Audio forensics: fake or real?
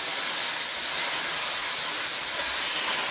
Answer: real